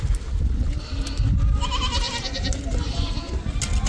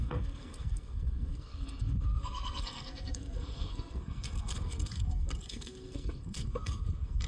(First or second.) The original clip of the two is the first